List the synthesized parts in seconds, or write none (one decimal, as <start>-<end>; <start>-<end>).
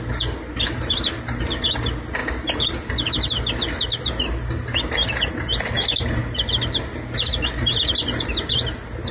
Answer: none